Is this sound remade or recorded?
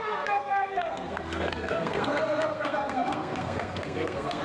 remade